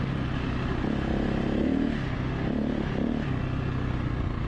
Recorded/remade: recorded